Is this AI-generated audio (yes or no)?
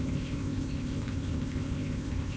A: yes